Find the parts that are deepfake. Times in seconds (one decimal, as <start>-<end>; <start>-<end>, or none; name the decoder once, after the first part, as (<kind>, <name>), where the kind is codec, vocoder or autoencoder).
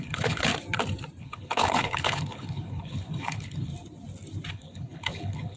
0.0-0.5 (codec, HILCodec); 1.2-3.7; 4.5-5.6